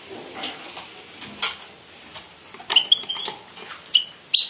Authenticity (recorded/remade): recorded